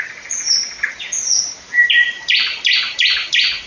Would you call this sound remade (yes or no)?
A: no